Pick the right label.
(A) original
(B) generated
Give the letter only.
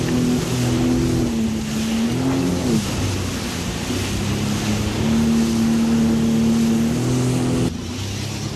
A